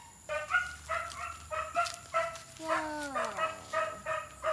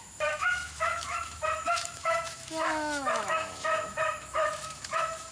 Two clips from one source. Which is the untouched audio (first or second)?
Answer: first